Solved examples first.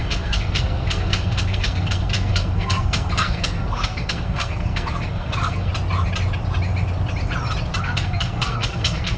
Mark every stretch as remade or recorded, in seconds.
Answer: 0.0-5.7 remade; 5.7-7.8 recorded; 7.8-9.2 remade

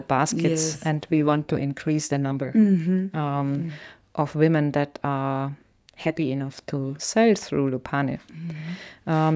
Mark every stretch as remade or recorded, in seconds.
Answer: 0.0-1.1 recorded; 1.1-3.7 remade; 3.7-5.6 recorded; 5.6-7.0 remade; 7.0-9.4 recorded

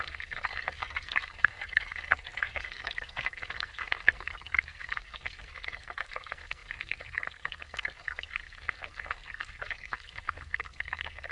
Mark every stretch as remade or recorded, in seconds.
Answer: 0.0-11.3 remade

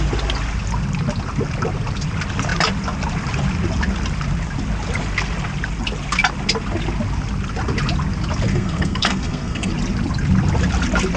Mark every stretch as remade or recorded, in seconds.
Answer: 0.0-8.5 recorded; 8.5-9.7 remade; 9.7-11.2 recorded

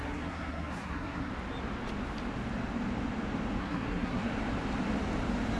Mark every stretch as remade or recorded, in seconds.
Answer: 0.0-1.3 remade; 1.3-3.6 recorded; 3.6-4.3 remade; 4.3-5.6 recorded

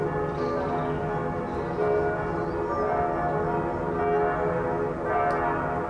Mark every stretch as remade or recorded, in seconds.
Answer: 0.0-5.9 recorded